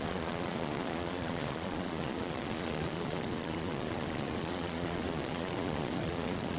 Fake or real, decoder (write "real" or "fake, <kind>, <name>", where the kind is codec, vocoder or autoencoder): fake, vocoder, Vocos